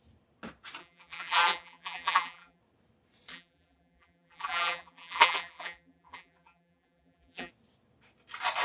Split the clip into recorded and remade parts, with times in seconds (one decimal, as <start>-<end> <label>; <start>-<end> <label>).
0.0-0.8 recorded; 0.8-2.6 remade; 2.6-3.3 recorded; 3.3-7.5 remade; 7.5-8.6 recorded